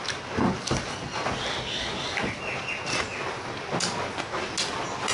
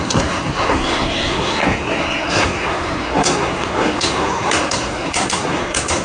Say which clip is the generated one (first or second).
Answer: second